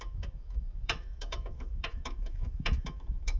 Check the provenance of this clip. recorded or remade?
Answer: remade